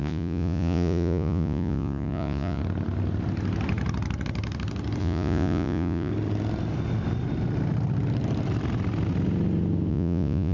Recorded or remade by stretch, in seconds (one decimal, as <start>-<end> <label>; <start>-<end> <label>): 0.0-2.6 remade; 2.6-5.0 recorded; 5.0-6.1 remade; 6.1-9.9 recorded; 9.9-10.5 remade